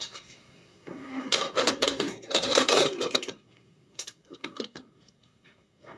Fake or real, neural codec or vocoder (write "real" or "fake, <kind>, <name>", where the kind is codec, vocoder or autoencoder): fake, codec, SNAC